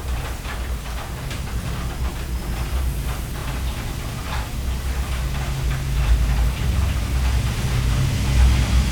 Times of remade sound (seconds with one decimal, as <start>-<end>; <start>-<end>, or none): none